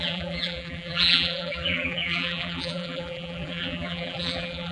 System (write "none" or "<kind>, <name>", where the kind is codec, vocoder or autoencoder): vocoder, BigVGAN v2